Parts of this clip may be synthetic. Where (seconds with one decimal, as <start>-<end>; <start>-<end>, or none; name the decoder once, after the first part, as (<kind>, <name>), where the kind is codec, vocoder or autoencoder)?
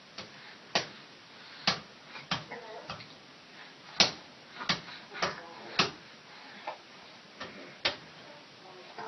none